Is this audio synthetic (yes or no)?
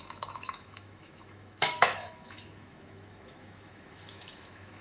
yes